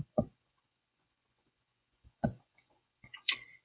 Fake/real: fake